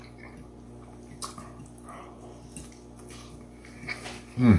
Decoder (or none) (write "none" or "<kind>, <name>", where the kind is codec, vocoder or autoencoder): none